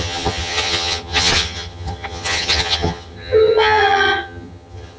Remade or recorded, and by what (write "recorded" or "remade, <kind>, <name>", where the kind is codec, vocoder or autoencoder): remade, vocoder, HiFi-GAN